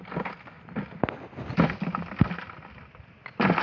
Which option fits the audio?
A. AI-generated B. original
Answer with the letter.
B